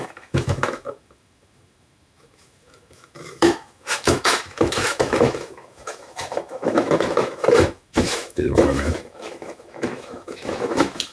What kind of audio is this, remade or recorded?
remade